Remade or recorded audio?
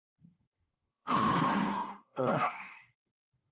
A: remade